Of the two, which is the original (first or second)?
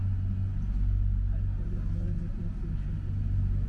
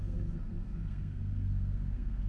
first